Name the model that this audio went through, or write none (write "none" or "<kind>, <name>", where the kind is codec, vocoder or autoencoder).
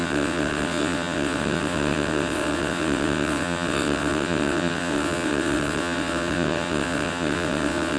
vocoder, WaveNeXt